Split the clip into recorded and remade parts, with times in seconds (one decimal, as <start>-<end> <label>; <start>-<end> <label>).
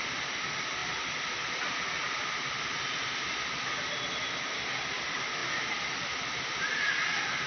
0.0-7.5 recorded